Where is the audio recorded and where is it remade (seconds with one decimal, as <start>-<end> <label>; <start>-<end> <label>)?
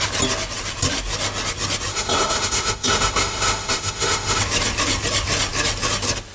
0.0-1.9 recorded; 1.9-4.4 remade; 4.4-6.3 recorded